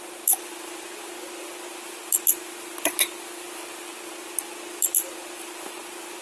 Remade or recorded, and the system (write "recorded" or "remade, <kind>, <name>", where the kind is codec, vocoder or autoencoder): recorded